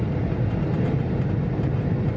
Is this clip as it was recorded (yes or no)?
yes